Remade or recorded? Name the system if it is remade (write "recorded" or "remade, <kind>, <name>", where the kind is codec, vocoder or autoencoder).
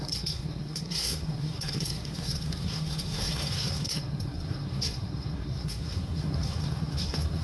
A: remade, codec, SNAC